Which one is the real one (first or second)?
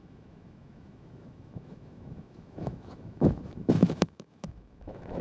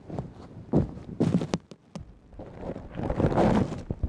second